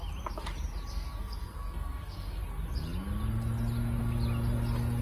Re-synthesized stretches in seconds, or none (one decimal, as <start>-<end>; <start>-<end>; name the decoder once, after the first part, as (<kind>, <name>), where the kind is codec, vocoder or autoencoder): 0.9-2.4 (codec, SNAC)